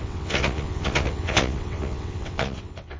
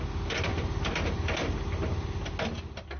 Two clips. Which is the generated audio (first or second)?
first